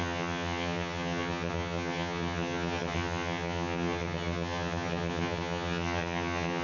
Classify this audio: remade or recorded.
remade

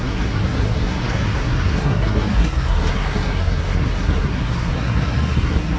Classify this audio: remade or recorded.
remade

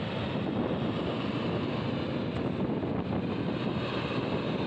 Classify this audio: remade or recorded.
recorded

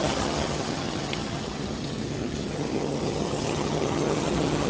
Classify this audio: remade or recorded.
remade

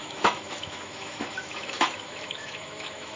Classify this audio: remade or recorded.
remade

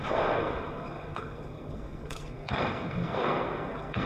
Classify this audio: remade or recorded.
remade